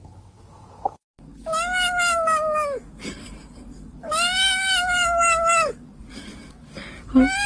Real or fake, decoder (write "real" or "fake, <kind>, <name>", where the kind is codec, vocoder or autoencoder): fake, codec, DAC